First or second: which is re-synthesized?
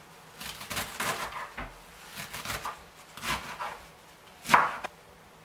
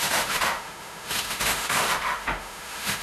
second